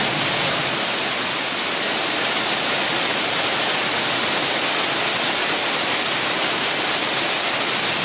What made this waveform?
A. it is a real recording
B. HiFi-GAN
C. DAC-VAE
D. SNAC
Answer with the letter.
A